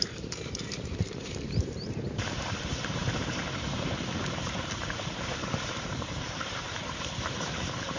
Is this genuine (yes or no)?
no